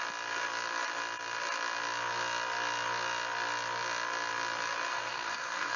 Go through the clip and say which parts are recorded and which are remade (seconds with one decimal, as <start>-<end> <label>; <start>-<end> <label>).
0.0-4.9 recorded; 4.9-5.8 remade